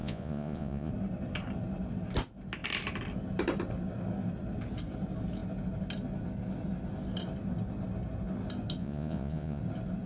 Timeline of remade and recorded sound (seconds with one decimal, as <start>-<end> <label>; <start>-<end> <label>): 0.0-0.9 remade; 0.9-8.8 recorded; 8.8-9.6 remade; 9.6-10.1 recorded